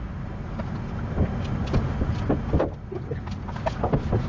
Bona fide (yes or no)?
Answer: yes